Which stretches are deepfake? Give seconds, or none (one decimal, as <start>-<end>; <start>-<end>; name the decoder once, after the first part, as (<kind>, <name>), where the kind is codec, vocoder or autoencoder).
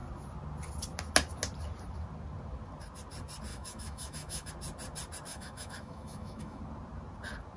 3.5-4.5 (autoencoder, DAC-VAE); 5.3-6.6